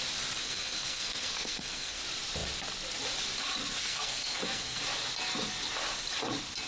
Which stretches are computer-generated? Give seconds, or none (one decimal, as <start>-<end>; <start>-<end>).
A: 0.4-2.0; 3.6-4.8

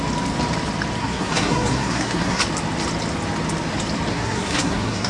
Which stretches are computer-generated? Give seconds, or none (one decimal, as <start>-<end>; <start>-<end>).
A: 1.0-2.4; 4.1-5.1

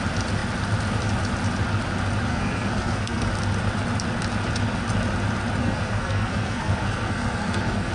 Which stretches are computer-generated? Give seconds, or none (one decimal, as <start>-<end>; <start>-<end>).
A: 2.3-3.3; 5.6-7.9